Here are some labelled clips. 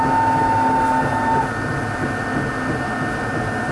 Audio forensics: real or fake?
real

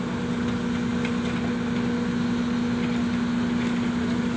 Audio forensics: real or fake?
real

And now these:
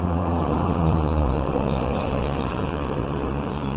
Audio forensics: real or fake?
fake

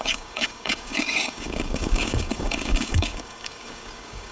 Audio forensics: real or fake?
fake